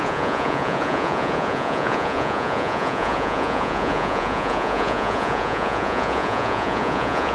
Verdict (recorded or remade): remade